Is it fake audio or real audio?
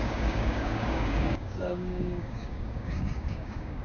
fake